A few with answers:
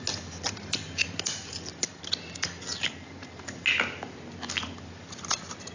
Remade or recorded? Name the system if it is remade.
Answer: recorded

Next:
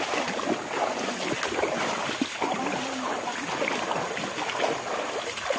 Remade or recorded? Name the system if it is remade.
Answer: recorded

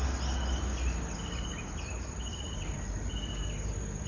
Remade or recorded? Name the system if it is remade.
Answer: recorded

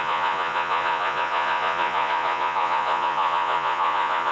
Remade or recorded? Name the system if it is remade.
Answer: remade, vocoder, Vocos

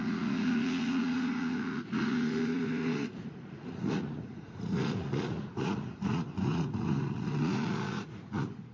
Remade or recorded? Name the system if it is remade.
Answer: remade, vocoder, Vocos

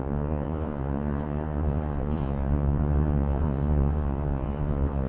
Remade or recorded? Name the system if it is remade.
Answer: remade, vocoder, Vocos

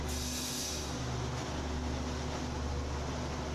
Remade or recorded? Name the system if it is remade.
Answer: recorded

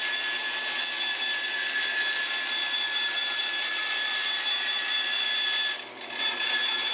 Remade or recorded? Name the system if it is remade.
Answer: recorded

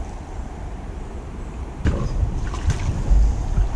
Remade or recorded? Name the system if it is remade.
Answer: recorded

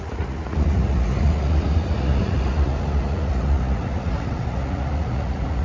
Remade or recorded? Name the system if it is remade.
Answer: remade, vocoder, Vocos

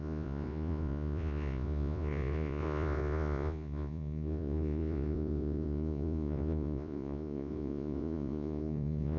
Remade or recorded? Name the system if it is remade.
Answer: remade, vocoder, Vocos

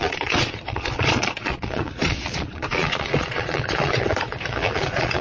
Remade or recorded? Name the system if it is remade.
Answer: remade, vocoder, Vocos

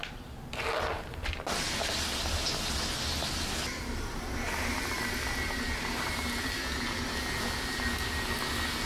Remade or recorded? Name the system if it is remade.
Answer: recorded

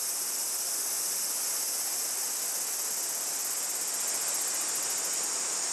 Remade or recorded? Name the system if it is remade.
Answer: recorded